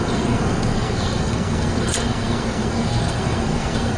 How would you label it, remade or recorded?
remade